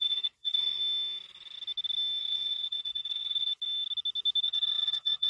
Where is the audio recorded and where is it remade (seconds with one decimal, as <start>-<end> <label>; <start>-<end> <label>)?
0.0-0.8 remade; 0.8-2.2 recorded; 2.2-3.5 remade; 3.5-4.4 recorded; 4.4-5.3 remade